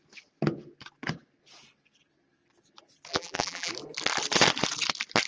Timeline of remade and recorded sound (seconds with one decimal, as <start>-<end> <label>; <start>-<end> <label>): 0.0-3.1 recorded; 3.1-3.7 remade; 3.7-5.3 recorded